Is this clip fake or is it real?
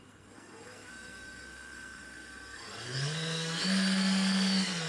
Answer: fake